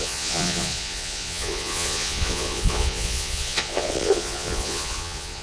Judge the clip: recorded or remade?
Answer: remade